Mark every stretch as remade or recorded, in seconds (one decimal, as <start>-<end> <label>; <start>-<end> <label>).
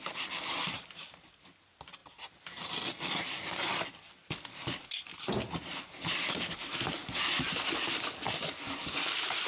0.0-9.5 recorded